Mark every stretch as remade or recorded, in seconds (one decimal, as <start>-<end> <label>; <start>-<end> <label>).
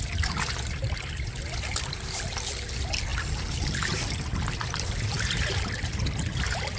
0.0-6.8 recorded